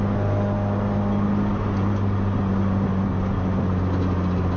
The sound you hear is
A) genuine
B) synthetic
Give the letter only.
A